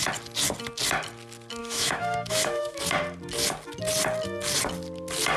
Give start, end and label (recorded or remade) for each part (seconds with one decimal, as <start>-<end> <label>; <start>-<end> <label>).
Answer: 0.0-1.6 recorded; 1.6-2.8 remade; 2.8-5.4 recorded